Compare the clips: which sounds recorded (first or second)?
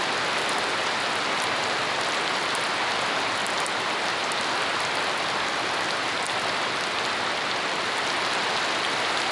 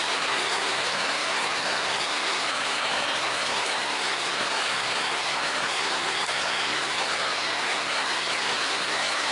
first